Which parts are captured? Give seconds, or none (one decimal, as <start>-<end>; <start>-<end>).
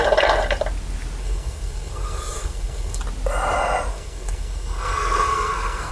0.0-1.2; 3.0-3.9